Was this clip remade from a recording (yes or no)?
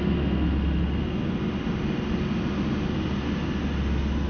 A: no